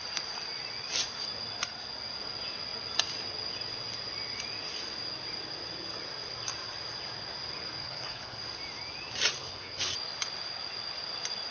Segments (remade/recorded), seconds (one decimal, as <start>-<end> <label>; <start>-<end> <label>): 0.0-7.8 recorded; 7.8-8.4 remade; 8.4-9.4 recorded; 9.4-9.9 remade; 9.9-11.5 recorded